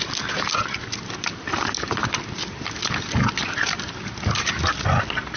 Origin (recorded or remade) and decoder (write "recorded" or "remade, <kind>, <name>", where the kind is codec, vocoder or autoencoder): recorded